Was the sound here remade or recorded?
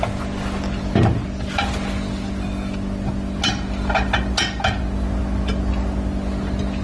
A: recorded